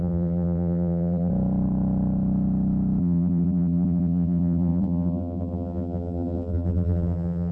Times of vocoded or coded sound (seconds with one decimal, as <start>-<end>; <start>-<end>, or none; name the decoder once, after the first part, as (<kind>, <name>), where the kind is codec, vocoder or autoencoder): 0.0-1.3 (vocoder, BigVGAN v2); 3.0-7.5